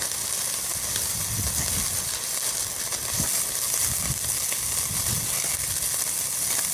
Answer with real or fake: real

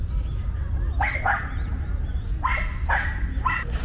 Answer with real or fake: real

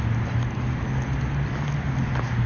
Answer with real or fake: real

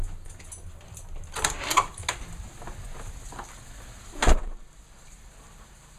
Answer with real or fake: real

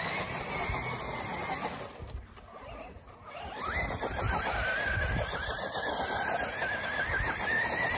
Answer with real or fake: real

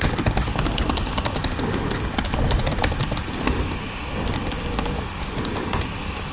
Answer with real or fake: real